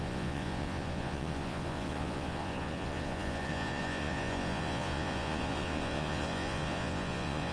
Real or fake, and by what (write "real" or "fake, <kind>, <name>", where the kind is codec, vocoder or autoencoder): fake, vocoder, Vocos